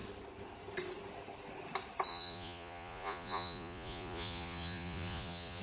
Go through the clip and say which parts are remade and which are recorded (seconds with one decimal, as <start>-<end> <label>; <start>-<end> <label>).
0.0-2.1 recorded; 2.1-5.6 remade